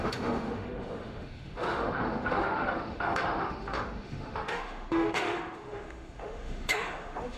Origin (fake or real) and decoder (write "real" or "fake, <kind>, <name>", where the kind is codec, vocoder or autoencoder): fake, autoencoder, DAC-VAE